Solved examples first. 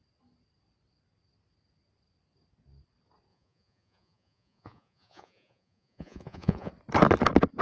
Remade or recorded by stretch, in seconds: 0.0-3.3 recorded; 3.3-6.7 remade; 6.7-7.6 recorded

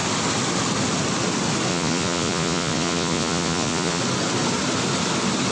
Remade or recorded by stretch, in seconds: 0.0-1.7 recorded; 1.7-4.0 remade; 4.0-5.5 recorded

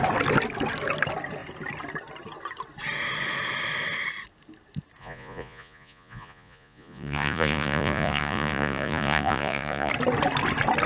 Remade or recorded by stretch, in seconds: 0.0-5.0 recorded; 5.0-9.9 remade; 9.9-10.9 recorded